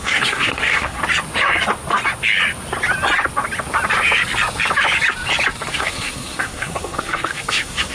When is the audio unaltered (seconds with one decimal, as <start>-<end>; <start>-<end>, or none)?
1.0-5.7